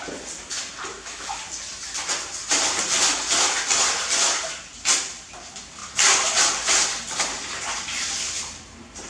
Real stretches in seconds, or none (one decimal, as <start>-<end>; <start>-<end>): 0.0-0.9; 1.4-9.1